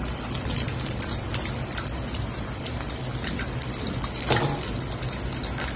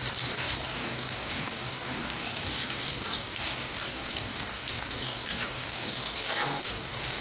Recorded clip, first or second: first